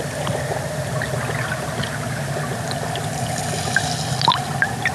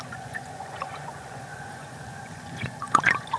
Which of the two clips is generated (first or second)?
second